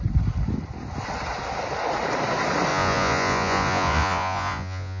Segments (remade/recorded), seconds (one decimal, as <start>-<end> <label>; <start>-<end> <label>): 0.0-2.7 recorded; 2.7-5.0 remade